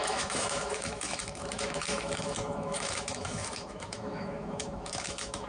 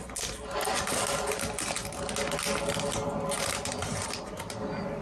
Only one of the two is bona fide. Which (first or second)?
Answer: second